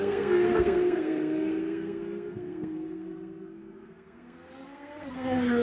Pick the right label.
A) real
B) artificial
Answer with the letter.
B